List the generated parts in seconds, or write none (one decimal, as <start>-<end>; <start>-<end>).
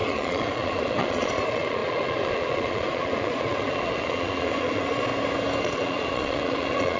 0.0-5.1; 5.6-7.0